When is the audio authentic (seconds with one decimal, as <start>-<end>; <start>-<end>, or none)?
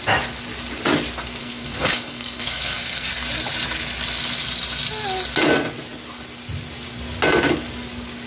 0.0-1.4; 3.1-8.3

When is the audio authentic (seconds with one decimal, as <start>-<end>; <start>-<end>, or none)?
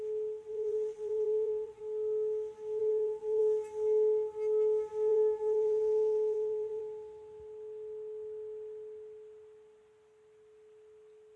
0.0-0.5; 1.8-2.8; 3.4-5.1; 6.8-11.4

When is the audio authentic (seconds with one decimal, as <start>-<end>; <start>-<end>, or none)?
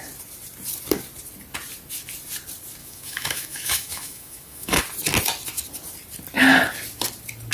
0.0-2.8; 4.8-7.5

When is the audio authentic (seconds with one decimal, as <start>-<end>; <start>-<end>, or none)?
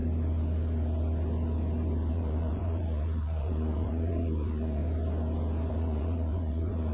0.0-2.1; 4.8-5.7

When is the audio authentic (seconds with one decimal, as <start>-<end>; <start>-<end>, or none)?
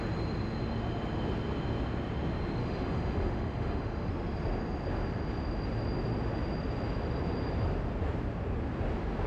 0.0-2.6; 4.1-9.3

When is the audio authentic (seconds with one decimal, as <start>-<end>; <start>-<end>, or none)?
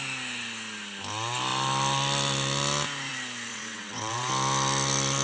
0.0-3.5; 4.3-5.2